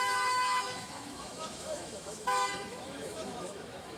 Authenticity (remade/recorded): remade